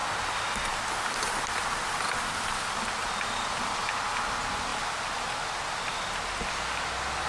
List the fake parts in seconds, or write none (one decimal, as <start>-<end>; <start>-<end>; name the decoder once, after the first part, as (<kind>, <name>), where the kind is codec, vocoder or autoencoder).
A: none